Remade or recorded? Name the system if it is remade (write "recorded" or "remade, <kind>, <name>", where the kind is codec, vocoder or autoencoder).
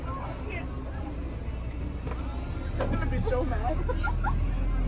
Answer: recorded